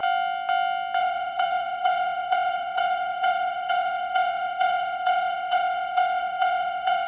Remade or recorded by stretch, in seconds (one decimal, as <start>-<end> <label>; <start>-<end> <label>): 0.0-1.0 recorded; 1.0-7.1 remade